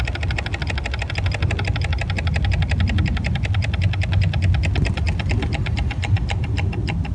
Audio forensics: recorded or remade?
recorded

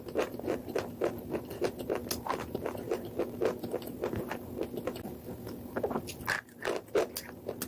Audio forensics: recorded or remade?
recorded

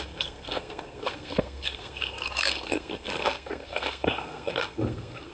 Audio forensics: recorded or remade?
remade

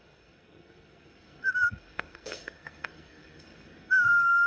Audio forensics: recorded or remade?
remade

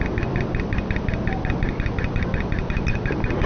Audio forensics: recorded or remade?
recorded